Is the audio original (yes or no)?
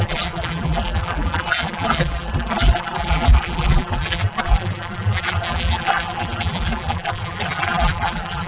no